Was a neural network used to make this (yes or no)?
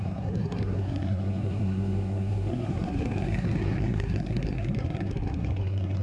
yes